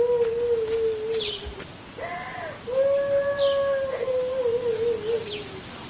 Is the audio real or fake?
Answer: real